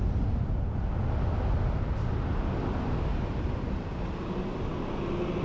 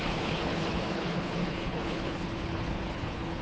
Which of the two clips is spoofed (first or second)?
second